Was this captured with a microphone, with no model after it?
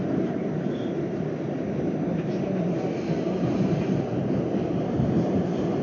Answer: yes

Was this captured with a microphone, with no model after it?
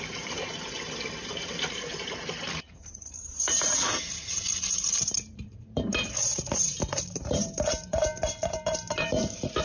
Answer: no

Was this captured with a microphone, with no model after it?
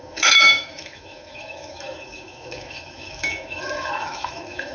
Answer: no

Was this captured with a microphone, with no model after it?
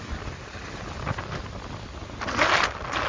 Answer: yes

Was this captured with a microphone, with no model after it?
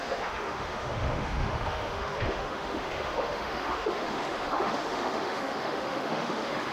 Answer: no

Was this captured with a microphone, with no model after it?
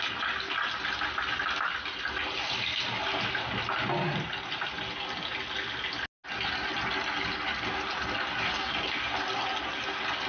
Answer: yes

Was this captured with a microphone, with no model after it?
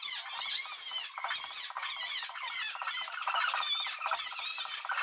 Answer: yes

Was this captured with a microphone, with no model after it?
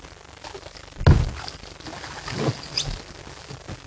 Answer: yes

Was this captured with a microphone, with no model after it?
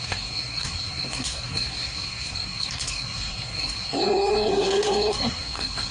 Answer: no